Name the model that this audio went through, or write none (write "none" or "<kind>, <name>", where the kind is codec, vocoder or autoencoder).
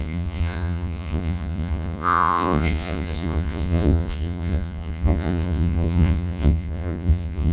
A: vocoder, Vocos